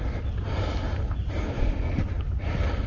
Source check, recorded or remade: recorded